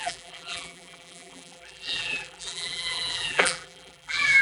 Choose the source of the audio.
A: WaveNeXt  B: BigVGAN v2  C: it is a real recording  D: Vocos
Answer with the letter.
B